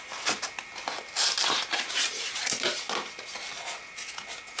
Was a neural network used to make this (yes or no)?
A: no